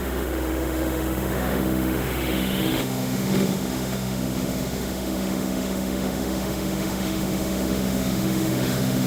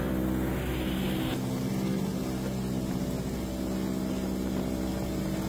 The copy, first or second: first